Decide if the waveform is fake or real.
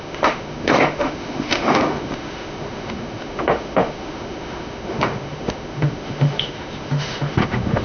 fake